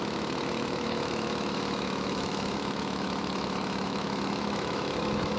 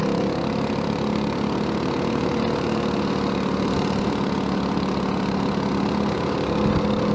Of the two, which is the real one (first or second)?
second